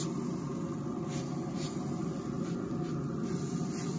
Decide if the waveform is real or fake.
real